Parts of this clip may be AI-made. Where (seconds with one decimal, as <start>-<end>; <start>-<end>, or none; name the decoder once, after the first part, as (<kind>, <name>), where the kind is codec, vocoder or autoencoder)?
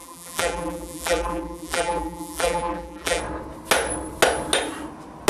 0.0-3.2 (vocoder, BigVGAN v2)